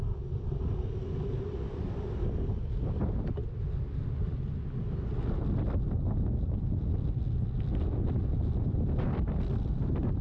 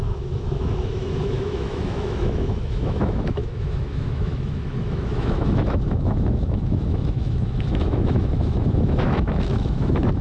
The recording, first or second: first